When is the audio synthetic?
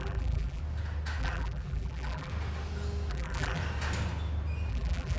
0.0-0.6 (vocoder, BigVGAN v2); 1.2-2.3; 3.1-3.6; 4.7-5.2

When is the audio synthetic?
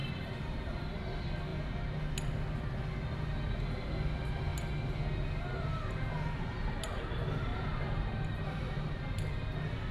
0.0-0.9 (vocoder, BigVGAN v2); 7.5-9.0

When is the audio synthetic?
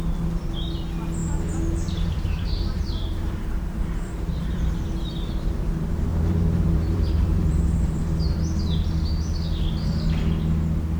1.2-5.3 (vocoder, BigVGAN v2); 6.1-8.0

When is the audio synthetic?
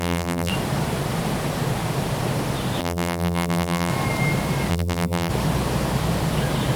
0.0-0.5 (vocoder, BigVGAN v2); 2.8-3.9; 4.7-5.3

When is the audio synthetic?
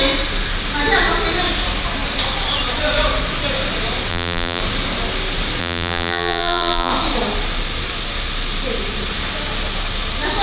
4.1-4.6 (vocoder, BigVGAN v2); 5.6-6.9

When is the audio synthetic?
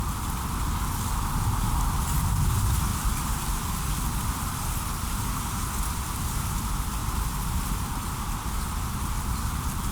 2.9-5.2 (vocoder, BigVGAN v2); 7.0-8.2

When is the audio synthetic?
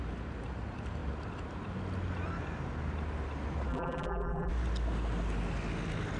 3.7-4.5 (vocoder, BigVGAN v2)